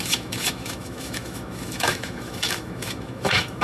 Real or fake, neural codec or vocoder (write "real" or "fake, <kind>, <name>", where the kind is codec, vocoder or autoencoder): fake, autoencoder, DAC-VAE